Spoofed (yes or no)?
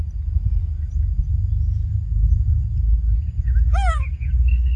no